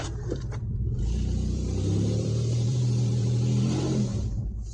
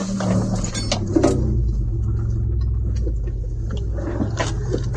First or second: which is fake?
first